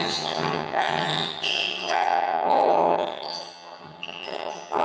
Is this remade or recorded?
remade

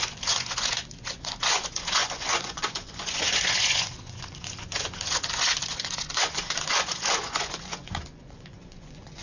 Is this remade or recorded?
remade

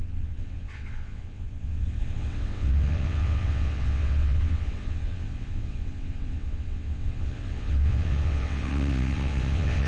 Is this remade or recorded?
remade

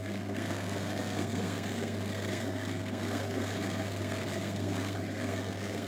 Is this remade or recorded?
remade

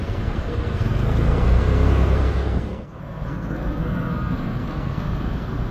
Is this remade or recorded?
remade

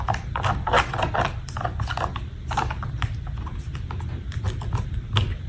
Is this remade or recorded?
recorded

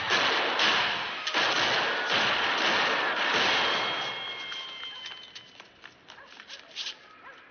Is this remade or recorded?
recorded